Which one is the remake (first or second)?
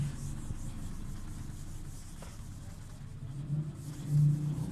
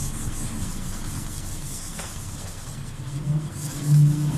second